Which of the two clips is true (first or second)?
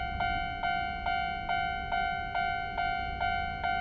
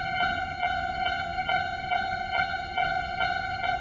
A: first